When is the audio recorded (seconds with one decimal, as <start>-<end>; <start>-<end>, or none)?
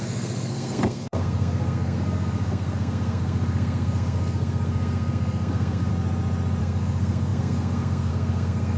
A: 5.9-6.6